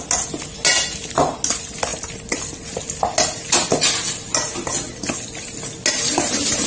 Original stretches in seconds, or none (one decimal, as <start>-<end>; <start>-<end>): 0.0-6.7